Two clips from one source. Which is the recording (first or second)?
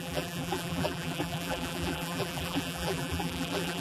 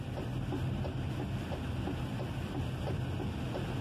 second